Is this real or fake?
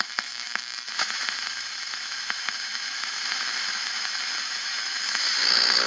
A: fake